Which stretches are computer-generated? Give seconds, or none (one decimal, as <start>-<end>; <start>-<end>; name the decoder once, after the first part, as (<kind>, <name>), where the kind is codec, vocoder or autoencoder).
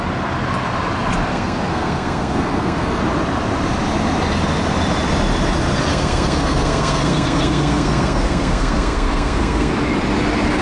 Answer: 1.3-3.0 (codec, SNAC); 5.9-9.7